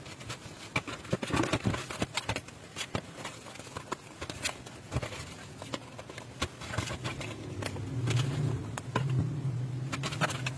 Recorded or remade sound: recorded